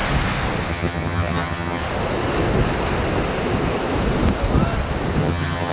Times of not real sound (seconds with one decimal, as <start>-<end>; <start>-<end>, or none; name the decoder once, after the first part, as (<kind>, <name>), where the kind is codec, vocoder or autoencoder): 0.7-1.8 (vocoder, HiFi-GAN); 5.2-5.7